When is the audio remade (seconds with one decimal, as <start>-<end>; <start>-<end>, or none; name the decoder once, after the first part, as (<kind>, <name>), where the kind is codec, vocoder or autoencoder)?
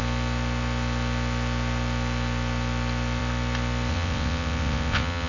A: 3.9-5.3 (vocoder, WaveNeXt)